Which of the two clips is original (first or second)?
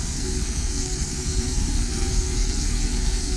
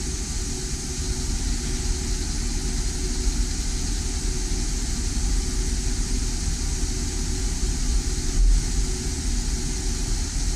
second